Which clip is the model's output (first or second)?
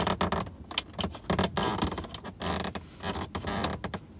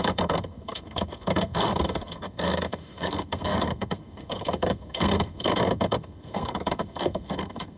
second